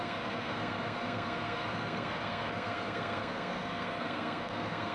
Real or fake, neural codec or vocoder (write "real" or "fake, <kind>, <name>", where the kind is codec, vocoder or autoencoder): fake, codec, SNAC